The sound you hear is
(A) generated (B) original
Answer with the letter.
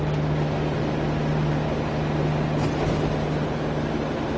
B